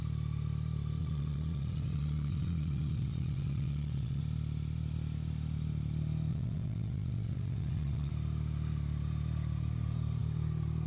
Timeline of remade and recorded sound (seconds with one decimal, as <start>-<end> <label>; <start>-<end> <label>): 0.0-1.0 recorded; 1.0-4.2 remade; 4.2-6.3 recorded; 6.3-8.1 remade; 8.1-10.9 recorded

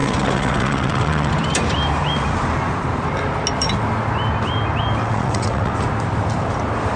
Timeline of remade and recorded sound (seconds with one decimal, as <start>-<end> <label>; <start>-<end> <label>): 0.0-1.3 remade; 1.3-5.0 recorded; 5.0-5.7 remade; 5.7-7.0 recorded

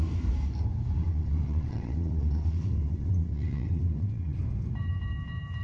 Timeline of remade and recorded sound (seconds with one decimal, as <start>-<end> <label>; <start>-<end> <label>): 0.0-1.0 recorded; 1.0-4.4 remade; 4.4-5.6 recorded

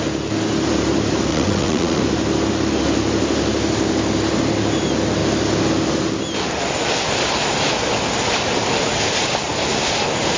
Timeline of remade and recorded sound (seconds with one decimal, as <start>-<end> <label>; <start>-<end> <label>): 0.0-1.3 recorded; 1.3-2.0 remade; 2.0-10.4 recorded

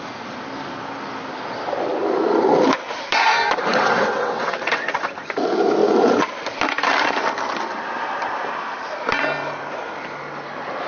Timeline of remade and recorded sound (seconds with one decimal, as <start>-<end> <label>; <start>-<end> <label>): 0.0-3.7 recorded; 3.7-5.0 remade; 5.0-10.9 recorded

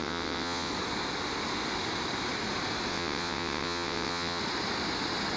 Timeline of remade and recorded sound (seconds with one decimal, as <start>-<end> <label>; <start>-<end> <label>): 0.0-0.7 remade; 0.7-2.9 recorded; 2.9-4.4 remade; 4.4-5.4 recorded

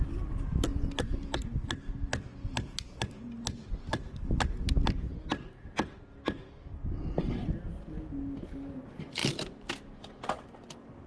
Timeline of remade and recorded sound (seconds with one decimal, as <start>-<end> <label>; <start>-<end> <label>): 0.0-11.1 recorded

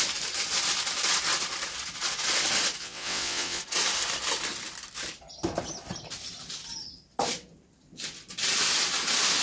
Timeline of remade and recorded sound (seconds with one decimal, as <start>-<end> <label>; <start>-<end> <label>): 0.0-2.8 recorded; 2.8-3.6 remade; 3.6-9.4 recorded